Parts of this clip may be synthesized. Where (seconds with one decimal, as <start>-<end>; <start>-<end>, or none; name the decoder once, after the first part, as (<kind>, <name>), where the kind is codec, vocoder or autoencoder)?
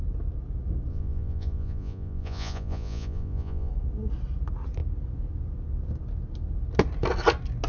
0.9-3.7 (vocoder, Vocos)